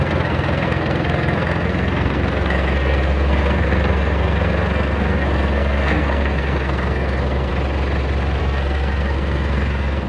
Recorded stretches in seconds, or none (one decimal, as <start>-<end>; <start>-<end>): 7.5-8.4